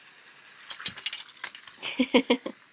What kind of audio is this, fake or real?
real